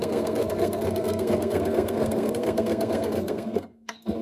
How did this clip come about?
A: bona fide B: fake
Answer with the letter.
B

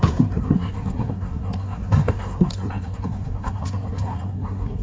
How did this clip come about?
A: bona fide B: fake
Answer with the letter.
B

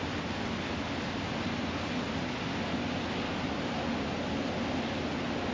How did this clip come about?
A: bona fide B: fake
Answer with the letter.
A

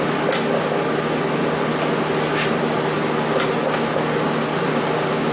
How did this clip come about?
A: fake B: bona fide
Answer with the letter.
B